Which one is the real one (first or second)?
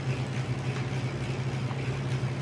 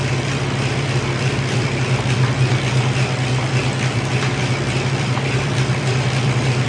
first